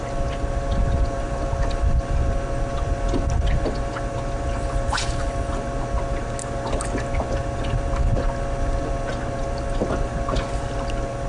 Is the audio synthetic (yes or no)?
no